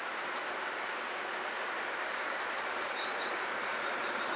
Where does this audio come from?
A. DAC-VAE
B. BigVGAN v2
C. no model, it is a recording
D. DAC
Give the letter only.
B